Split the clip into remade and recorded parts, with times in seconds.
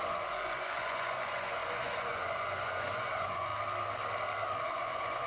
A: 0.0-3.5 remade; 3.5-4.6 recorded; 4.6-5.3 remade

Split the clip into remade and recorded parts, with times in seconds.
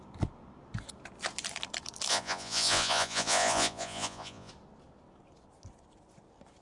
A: 0.0-2.1 recorded; 2.1-4.5 remade; 4.5-6.6 recorded